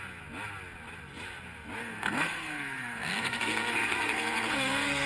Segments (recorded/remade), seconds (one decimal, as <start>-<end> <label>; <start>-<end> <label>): 0.0-1.8 recorded; 1.8-5.1 remade